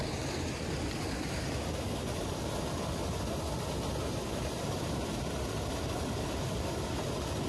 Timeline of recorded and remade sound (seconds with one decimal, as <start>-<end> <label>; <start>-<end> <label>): 0.0-7.5 recorded